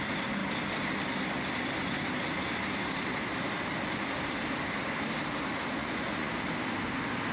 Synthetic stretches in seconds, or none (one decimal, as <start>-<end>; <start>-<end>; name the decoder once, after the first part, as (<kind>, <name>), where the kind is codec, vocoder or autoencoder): 5.8-6.3 (vocoder, Vocos)